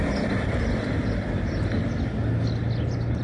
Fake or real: real